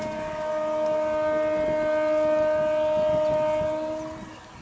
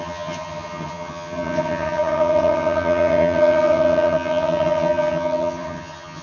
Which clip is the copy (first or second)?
second